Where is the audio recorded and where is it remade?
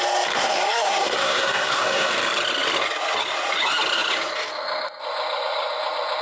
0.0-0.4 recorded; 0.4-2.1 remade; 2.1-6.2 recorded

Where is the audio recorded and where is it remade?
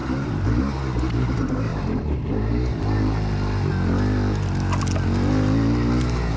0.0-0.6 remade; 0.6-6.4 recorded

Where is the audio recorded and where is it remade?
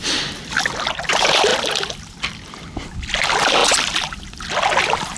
0.0-5.2 recorded